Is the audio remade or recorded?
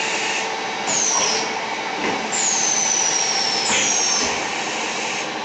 recorded